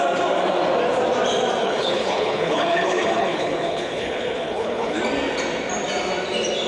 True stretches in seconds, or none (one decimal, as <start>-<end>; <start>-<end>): 0.0-1.6; 5.0-6.7